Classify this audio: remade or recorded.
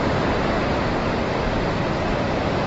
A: remade